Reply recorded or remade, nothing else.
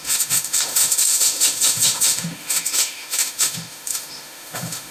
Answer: remade